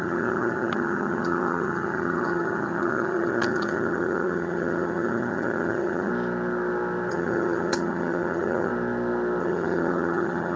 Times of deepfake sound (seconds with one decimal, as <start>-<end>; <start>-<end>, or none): 0.0-6.1; 7.1-8.7; 9.4-10.6

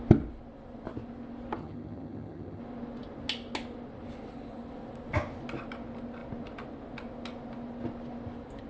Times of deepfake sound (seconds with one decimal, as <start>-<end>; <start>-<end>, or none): 1.6-2.6

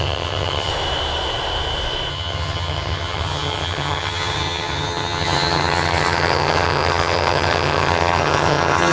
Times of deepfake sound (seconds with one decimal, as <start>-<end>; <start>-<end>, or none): 0.0-0.7; 2.1-8.9

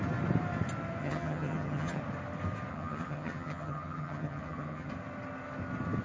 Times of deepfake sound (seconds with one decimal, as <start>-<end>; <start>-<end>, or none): 1.0-2.0; 2.7-4.9

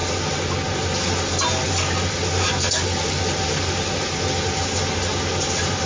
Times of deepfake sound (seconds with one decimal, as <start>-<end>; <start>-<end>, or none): none

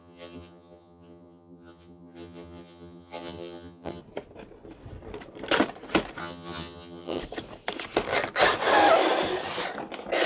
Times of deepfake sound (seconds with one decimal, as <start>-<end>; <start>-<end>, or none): 0.0-4.0; 6.2-7.2

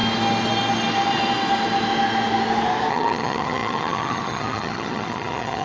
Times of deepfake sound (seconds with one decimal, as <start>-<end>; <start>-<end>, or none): 2.9-5.6

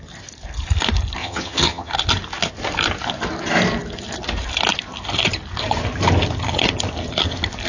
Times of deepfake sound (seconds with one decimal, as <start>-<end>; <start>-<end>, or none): 1.2-1.9